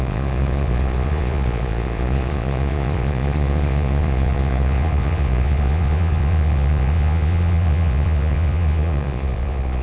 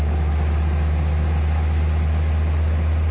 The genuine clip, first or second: second